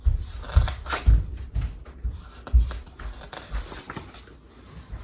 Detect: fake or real real